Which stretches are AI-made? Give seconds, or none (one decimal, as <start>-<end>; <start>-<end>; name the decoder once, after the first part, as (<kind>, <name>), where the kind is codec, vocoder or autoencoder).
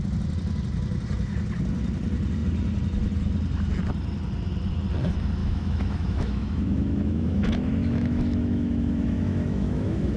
5.4-10.2 (autoencoder, DAC-VAE)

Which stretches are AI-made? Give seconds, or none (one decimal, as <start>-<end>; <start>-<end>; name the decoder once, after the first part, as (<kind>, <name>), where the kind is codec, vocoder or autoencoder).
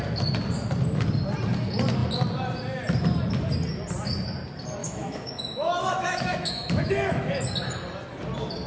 4.8-7.4 (autoencoder, DAC-VAE)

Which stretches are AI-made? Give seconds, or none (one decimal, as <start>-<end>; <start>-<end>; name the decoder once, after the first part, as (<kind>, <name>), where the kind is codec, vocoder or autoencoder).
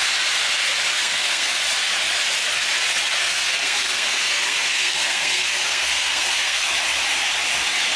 0.9-1.6 (codec, SNAC); 3.2-6.7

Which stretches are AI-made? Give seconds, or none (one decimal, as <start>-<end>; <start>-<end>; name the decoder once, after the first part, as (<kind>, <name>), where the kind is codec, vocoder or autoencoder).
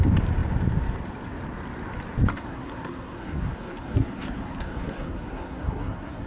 2.3-6.3 (codec, SNAC)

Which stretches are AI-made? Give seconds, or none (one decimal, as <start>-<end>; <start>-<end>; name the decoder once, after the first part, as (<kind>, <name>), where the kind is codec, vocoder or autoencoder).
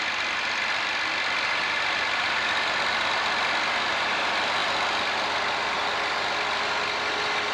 none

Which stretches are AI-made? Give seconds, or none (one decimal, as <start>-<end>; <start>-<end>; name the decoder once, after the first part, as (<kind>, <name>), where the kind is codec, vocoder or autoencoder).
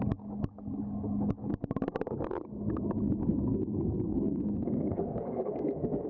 3.3-6.1 (codec, SNAC)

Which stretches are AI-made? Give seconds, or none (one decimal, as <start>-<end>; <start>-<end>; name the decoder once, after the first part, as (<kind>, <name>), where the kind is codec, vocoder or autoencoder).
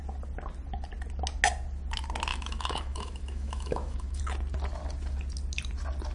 2.3-4.2 (autoencoder, DAC-VAE)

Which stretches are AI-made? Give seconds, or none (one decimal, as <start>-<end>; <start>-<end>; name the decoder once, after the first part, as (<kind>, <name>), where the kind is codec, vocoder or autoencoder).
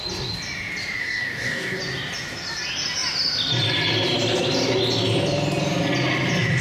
1.0-1.8 (codec, DAC)